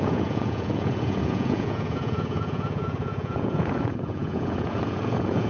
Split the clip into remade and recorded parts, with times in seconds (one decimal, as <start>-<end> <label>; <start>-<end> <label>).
0.0-5.5 remade